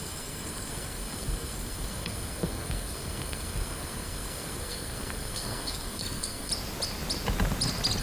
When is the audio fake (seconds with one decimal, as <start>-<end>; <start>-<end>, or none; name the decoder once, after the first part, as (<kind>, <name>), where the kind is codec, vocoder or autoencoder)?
0.0-6.5 (codec, SNAC)